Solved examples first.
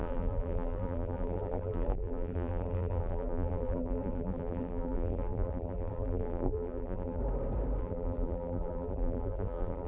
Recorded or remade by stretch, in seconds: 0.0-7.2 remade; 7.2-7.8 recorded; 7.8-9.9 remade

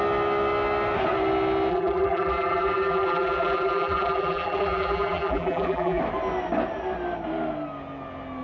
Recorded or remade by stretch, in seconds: 0.0-1.7 recorded; 1.7-6.0 remade; 6.0-8.4 recorded

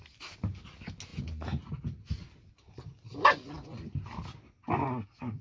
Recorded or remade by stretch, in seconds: 0.0-5.4 recorded

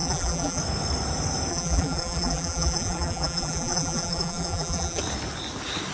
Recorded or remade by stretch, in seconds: 0.0-0.6 remade; 0.6-1.5 recorded; 1.5-5.0 remade; 5.0-5.9 recorded